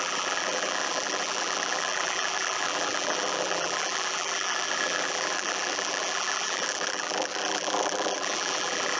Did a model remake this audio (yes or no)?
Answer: yes